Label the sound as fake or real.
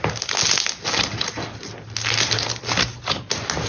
real